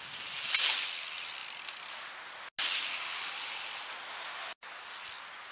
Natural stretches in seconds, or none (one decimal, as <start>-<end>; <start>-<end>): 0.0-5.5